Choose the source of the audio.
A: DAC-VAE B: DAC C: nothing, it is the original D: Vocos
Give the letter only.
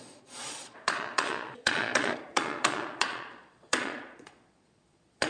D